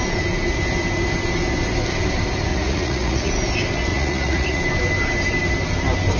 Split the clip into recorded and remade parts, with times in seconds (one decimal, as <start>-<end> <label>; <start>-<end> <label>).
0.0-2.5 recorded; 2.5-3.3 remade; 3.3-3.9 recorded; 3.9-4.6 remade; 4.6-6.2 recorded